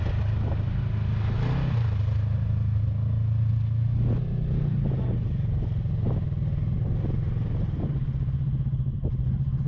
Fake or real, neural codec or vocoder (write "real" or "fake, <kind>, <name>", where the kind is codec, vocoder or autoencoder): real